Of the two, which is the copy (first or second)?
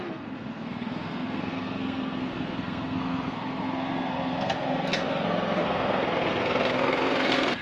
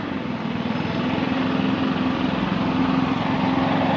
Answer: first